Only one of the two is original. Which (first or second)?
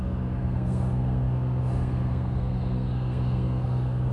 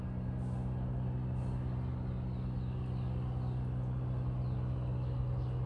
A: second